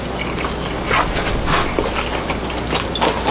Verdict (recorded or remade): recorded